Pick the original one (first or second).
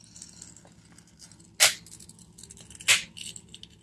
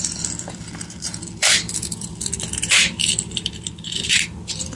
first